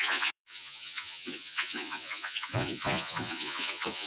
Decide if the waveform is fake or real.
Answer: fake